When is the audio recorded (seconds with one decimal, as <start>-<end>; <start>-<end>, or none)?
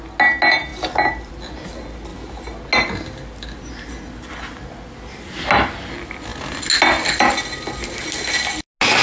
0.0-9.0